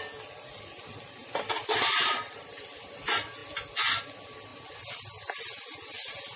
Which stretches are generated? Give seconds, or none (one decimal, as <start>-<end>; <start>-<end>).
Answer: 1.2-2.9